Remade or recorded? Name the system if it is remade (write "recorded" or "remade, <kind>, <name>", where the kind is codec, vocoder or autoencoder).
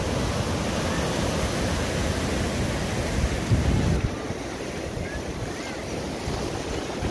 recorded